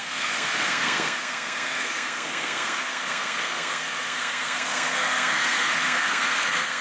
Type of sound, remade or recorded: remade